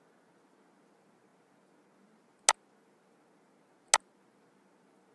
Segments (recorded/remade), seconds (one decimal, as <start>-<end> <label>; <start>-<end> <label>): 0.0-5.1 recorded

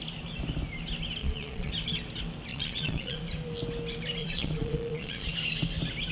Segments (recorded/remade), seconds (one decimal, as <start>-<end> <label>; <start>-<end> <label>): 0.0-1.2 recorded; 1.2-1.7 remade; 1.7-2.5 recorded; 2.5-3.2 remade; 3.2-4.2 recorded; 4.2-5.3 remade; 5.3-6.1 recorded